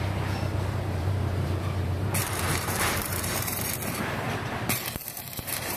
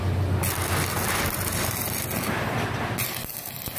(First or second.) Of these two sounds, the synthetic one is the first